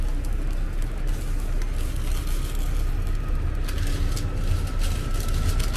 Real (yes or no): yes